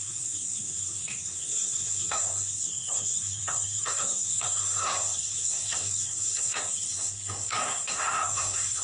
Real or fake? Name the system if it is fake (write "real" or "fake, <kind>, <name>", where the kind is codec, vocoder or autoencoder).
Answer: fake, codec, SNAC